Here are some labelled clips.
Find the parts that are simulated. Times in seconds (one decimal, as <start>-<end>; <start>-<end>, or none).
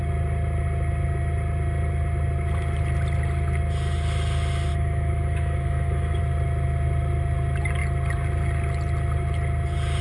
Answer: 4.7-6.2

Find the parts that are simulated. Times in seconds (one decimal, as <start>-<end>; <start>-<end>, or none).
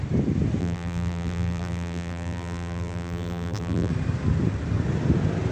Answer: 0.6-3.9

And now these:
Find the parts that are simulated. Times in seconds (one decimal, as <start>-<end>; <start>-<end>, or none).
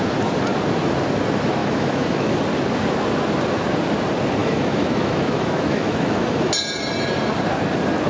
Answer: 1.6-2.3; 4.4-6.5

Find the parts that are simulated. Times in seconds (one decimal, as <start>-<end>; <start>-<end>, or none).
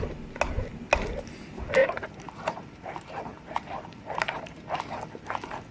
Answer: 1.8-4.8